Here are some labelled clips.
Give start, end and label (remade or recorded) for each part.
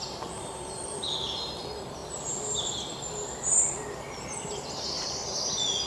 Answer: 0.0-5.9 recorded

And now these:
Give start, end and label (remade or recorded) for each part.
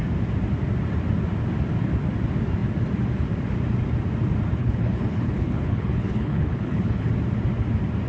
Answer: 0.0-4.6 recorded; 4.6-7.1 remade; 7.1-8.1 recorded